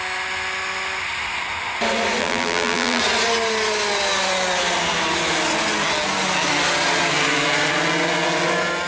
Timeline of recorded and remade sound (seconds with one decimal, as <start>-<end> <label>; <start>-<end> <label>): 0.0-2.2 recorded; 2.2-3.0 remade; 3.0-8.9 recorded